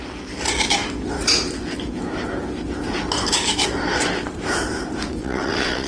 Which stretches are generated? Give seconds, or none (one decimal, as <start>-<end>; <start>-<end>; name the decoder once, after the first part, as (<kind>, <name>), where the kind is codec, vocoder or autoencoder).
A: 5.2-5.9 (vocoder, WaveNeXt)